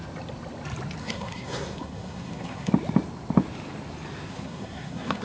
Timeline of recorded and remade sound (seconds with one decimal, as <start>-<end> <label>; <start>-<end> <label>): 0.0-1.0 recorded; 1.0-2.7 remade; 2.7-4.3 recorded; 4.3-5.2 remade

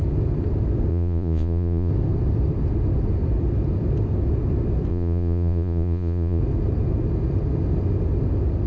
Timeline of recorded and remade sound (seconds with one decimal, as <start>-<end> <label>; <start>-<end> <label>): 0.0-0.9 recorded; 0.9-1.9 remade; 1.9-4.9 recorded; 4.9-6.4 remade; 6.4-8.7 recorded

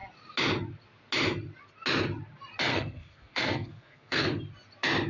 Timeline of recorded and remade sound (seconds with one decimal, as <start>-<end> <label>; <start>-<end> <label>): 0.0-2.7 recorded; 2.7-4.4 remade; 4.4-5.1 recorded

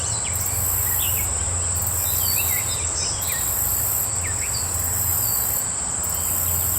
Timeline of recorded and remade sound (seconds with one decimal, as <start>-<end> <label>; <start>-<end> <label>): 0.0-6.8 recorded

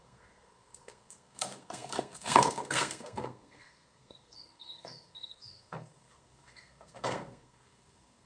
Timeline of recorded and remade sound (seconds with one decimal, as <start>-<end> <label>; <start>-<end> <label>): 0.0-8.3 remade

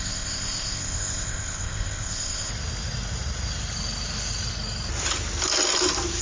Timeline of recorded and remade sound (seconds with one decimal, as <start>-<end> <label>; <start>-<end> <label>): 0.0-2.5 remade; 2.5-6.2 recorded

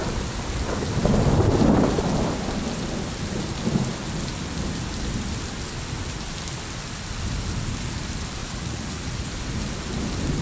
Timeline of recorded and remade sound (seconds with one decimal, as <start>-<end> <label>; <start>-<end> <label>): 0.0-8.4 recorded; 8.4-9.3 remade; 9.3-10.4 recorded